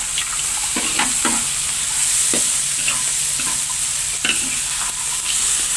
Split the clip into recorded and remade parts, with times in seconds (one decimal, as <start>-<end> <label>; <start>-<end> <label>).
0.0-5.8 recorded